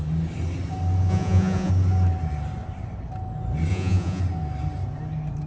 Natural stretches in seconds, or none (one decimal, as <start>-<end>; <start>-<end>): 0.0-1.1; 1.7-3.7; 4.2-5.5